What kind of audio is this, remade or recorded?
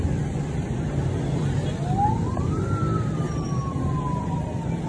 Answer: recorded